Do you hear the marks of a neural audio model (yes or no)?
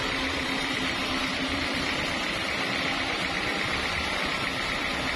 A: yes